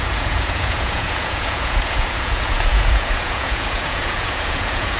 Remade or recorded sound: remade